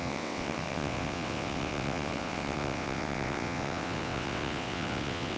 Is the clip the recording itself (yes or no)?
no